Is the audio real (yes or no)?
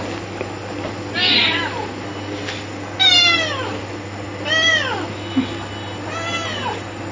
yes